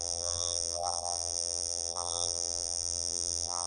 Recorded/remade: remade